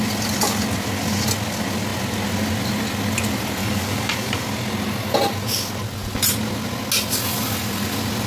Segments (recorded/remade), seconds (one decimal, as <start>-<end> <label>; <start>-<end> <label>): 0.0-3.6 recorded; 3.6-4.5 remade; 4.5-8.3 recorded